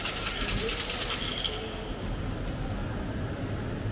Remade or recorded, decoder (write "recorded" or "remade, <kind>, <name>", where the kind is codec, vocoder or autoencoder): recorded